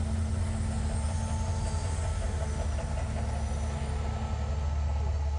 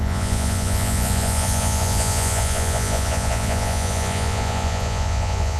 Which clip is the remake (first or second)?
second